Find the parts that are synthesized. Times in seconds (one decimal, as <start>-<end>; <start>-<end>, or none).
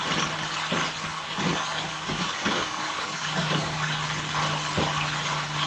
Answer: 1.1-4.0